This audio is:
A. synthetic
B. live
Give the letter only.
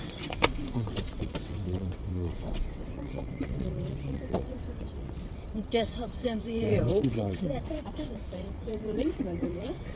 A